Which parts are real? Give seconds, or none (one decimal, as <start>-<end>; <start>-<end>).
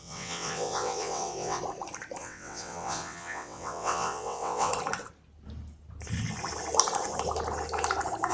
1.6-2.2; 4.7-8.3